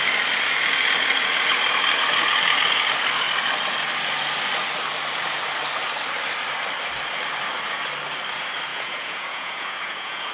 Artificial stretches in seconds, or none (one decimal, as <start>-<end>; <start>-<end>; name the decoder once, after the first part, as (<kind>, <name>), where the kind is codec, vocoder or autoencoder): 8.7-10.3 (vocoder, Vocos)